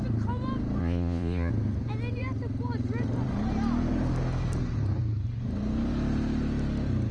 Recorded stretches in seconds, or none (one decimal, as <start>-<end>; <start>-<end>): 0.0-0.8; 1.5-7.1